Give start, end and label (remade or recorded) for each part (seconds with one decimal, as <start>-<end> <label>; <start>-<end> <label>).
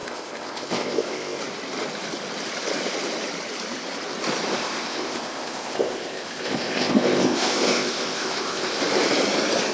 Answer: 0.0-1.4 remade; 1.4-4.5 recorded; 4.5-8.8 remade; 8.8-9.7 recorded